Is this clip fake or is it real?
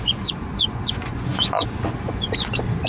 fake